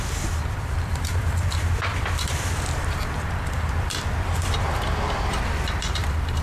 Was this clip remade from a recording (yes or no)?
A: yes